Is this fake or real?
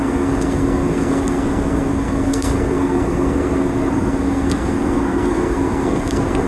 fake